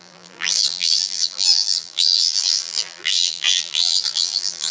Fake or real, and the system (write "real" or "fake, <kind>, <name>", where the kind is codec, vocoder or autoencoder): fake, vocoder, BigVGAN v2